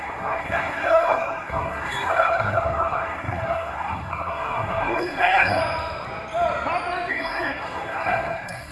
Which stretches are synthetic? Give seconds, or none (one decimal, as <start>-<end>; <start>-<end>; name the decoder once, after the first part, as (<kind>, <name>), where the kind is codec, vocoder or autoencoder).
0.0-5.6 (codec, SNAC); 7.1-8.7

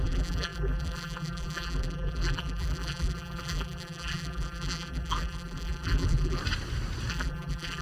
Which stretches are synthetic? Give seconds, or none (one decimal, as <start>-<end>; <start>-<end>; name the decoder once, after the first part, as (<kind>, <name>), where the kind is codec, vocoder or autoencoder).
0.0-6.4 (vocoder, BigVGAN v2); 7.1-7.8

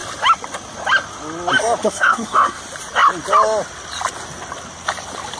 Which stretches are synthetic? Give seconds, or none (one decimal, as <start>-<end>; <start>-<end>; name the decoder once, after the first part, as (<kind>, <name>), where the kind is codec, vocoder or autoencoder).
1.9-2.6 (codec, SNAC)

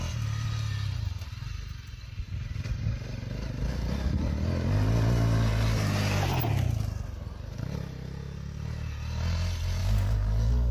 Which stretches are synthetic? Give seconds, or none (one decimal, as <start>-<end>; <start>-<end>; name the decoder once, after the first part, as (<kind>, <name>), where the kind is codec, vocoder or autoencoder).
9.8-10.7 (codec, DAC)

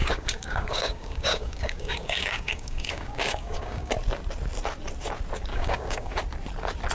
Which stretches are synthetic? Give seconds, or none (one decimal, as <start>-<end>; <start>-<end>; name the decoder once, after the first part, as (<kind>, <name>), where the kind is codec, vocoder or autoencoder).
0.0-3.9 (codec, DAC); 5.5-6.2

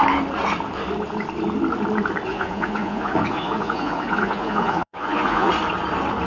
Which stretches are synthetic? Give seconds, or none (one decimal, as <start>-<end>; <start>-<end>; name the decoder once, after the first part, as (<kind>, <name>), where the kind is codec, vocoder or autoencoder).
2.3-5.5 (vocoder, Vocos)

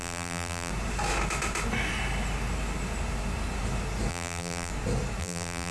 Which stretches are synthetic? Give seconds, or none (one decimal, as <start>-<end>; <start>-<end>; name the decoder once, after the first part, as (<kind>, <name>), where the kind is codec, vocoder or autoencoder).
0.0-0.7 (vocoder, BigVGAN v2); 4.1-4.7; 5.2-5.7